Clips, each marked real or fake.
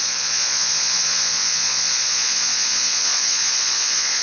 fake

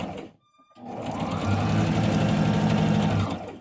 real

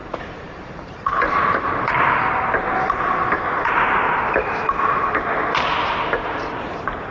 fake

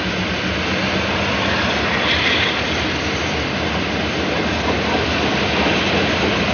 fake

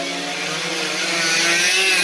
real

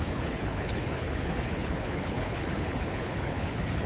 fake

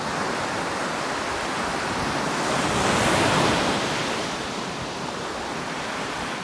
real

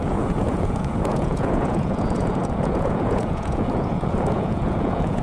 fake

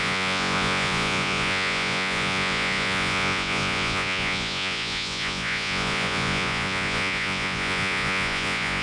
fake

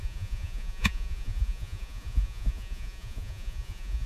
fake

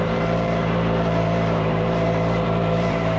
fake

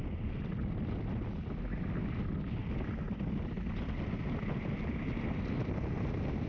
real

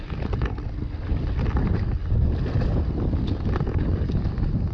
real